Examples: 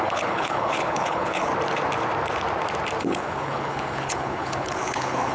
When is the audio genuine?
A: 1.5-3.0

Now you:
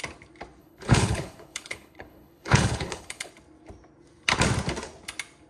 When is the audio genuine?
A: 0.0-0.6; 3.3-5.5

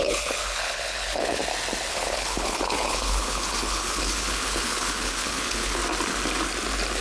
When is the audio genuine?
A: 1.4-1.9; 5.8-7.0

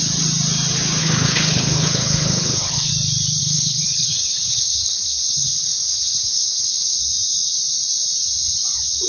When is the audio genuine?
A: 0.0-1.0; 2.9-3.4; 7.0-9.1

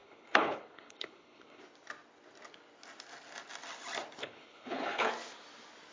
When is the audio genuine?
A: 1.6-4.2; 5.1-5.9